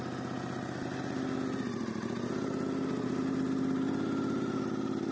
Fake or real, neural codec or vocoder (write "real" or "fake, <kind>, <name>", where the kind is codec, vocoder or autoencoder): real